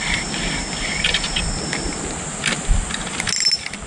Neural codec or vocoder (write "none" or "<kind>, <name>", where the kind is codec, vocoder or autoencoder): none